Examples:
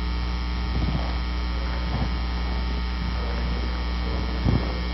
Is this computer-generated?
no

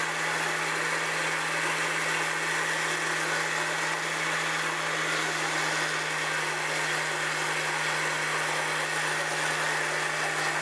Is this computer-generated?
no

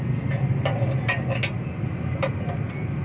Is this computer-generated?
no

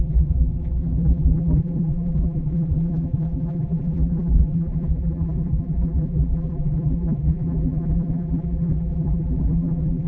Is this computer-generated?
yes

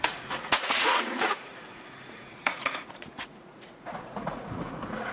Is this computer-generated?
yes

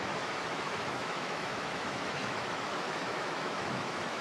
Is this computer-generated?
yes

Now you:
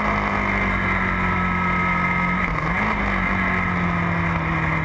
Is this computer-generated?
no